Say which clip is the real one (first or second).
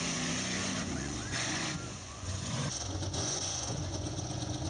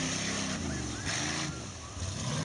second